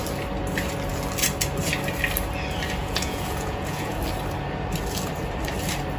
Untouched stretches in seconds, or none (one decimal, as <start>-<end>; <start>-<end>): 0.0-2.8; 4.0-6.0